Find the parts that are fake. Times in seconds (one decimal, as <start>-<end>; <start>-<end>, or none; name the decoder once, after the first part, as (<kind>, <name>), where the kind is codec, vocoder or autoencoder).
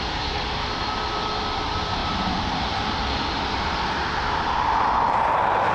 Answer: none